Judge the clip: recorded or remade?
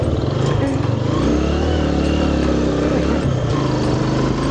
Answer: recorded